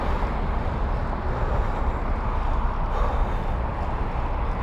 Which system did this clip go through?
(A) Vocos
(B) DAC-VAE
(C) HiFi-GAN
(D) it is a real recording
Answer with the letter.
D